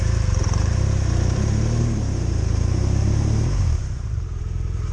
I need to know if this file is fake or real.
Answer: fake